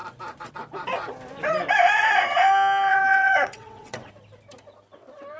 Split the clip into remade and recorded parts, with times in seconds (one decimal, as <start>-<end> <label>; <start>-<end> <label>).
0.0-2.9 recorded; 2.9-4.1 remade; 4.1-5.4 recorded